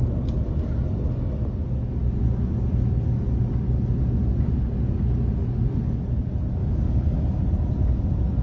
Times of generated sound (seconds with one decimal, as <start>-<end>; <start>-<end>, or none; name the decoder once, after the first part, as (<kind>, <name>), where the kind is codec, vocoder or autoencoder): 6.6-7.4 (codec, DAC)